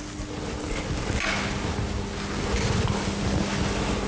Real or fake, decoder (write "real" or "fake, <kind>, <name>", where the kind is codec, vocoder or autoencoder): real